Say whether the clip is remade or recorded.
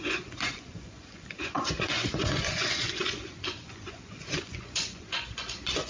remade